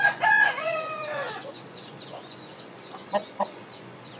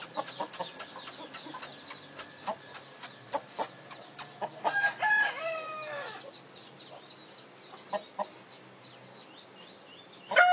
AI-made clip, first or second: first